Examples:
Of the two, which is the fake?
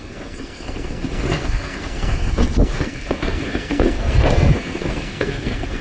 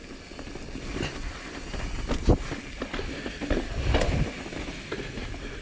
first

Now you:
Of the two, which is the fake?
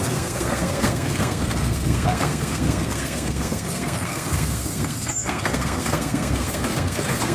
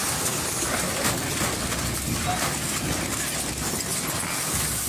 first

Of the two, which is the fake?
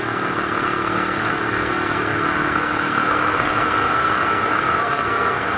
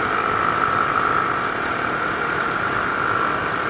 first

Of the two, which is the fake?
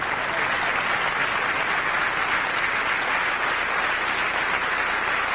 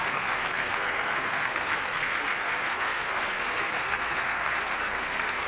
second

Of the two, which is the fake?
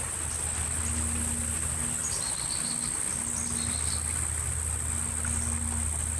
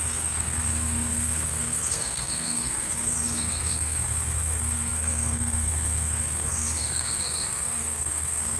second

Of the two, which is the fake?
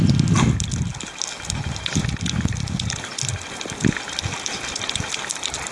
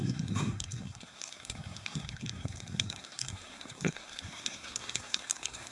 second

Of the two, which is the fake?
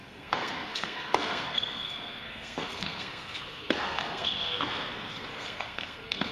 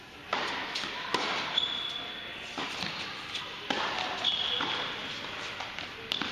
first